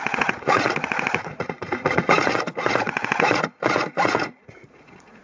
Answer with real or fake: fake